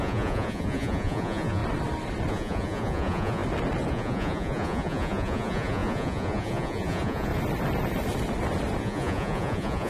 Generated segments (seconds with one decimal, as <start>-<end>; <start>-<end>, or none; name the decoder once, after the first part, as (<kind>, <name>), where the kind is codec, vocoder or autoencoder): 0.0-1.6 (vocoder, Vocos); 2.3-3.4; 3.9-7.3; 8.8-9.9